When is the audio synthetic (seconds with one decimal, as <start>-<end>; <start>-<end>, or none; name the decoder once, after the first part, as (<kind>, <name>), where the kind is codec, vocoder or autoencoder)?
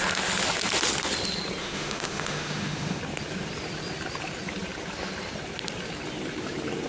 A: 1.6-3.0 (autoencoder, DAC-VAE)